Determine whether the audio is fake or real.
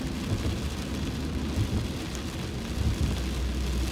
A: real